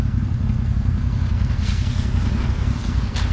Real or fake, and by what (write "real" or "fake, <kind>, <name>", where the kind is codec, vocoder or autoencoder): fake, codec, SNAC